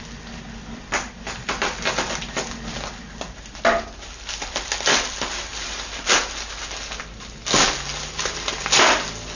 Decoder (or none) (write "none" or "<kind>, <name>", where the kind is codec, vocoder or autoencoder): none